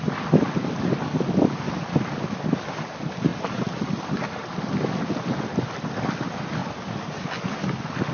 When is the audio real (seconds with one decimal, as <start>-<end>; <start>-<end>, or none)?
0.0-8.1